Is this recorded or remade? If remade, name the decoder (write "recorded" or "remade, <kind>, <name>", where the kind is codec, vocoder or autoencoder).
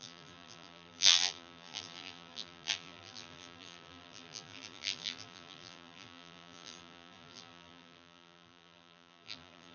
remade, vocoder, BigVGAN v2